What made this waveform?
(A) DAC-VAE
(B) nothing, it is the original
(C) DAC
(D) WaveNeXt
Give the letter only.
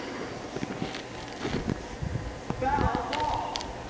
B